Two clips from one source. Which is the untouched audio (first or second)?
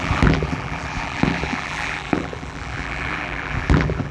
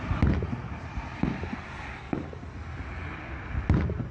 second